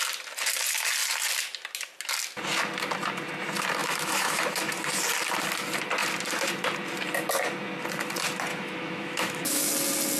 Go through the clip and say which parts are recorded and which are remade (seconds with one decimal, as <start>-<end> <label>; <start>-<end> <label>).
0.0-3.8 recorded; 3.8-4.4 remade; 4.4-8.5 recorded; 8.5-9.7 remade; 9.7-10.2 recorded